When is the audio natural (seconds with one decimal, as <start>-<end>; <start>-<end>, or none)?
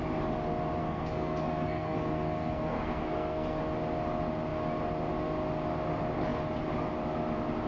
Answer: 0.0-0.8; 3.6-7.7